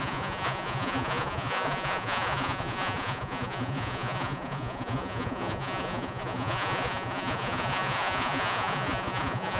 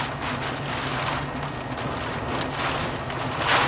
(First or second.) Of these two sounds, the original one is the second